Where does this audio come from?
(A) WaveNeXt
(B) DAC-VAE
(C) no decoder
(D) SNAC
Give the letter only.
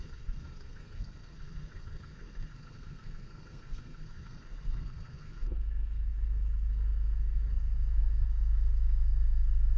D